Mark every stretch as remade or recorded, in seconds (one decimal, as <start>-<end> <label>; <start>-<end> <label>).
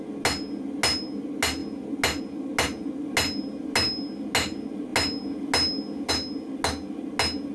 0.0-7.5 recorded